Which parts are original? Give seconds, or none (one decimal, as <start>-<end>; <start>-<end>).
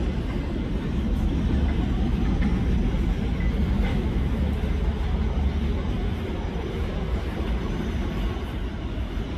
0.0-3.9; 4.5-9.4